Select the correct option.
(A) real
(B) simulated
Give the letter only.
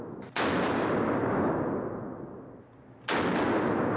A